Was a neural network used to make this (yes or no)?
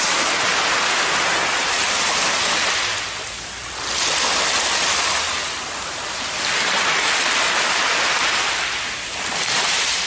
no